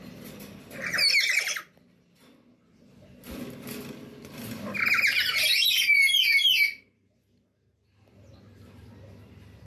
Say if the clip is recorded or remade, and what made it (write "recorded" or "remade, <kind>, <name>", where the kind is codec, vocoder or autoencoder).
recorded